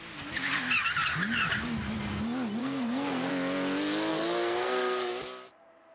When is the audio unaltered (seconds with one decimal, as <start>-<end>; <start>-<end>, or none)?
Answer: 0.0-2.6; 3.3-4.1; 5.1-5.9